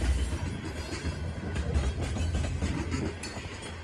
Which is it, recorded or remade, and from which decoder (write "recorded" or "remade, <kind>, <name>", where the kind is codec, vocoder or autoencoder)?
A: recorded